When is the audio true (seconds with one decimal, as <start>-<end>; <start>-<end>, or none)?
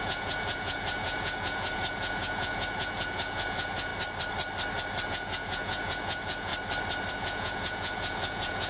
3.9-5.1; 6.5-7.1